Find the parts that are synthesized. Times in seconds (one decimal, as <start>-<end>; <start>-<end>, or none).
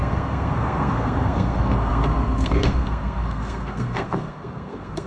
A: 0.0-5.1